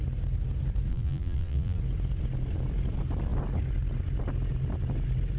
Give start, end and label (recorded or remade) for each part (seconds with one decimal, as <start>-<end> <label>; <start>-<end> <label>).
0.0-0.9 recorded; 0.9-1.8 remade; 1.8-5.4 recorded

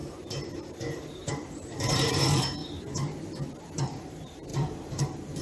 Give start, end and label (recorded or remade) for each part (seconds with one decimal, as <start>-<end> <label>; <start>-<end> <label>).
0.0-2.6 remade; 2.6-3.8 recorded; 3.8-5.4 remade

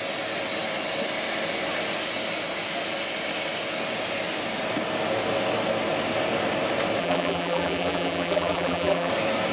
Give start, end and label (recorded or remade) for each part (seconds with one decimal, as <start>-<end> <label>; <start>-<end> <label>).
0.0-7.0 recorded; 7.0-9.1 remade; 9.1-9.5 recorded

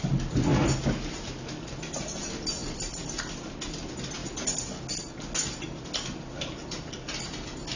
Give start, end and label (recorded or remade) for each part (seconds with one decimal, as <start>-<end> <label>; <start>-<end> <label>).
0.0-7.8 recorded

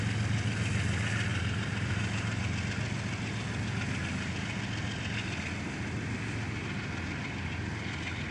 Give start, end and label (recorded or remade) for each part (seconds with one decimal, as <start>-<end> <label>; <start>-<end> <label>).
0.0-1.3 recorded; 1.3-2.4 remade; 2.4-8.3 recorded